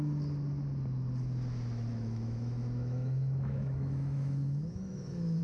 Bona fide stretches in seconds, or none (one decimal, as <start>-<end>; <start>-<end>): 0.0-1.9